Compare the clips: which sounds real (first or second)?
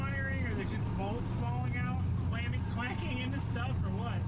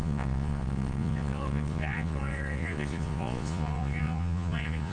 first